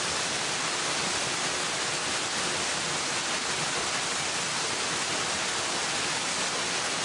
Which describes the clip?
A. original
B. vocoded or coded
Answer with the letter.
A